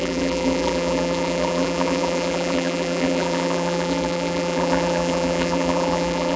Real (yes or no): no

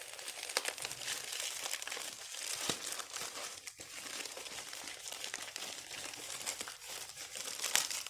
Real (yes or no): yes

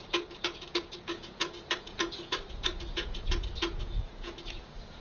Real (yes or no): no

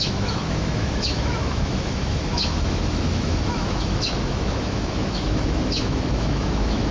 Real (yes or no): no